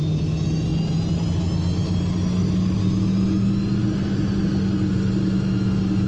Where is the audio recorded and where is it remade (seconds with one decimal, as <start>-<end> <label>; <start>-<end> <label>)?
0.0-6.1 recorded